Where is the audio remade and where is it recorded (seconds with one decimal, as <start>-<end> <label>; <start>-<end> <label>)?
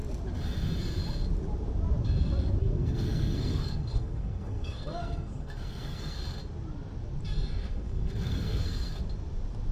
0.0-2.6 recorded; 2.6-6.2 remade; 6.2-7.6 recorded; 7.6-9.0 remade; 9.0-9.7 recorded